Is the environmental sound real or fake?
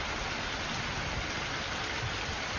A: real